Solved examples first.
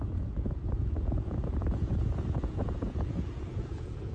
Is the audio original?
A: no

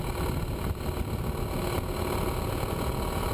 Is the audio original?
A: yes